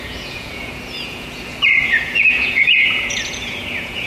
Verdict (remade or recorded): remade